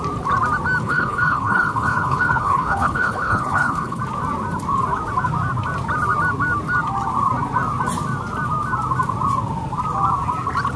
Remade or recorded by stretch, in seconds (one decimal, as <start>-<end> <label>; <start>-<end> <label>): 0.0-0.8 recorded; 0.8-4.0 remade; 4.0-10.8 recorded